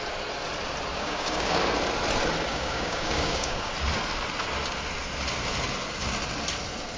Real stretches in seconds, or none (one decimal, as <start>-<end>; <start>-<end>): 0.0-0.9; 1.6-2.5; 3.7-7.0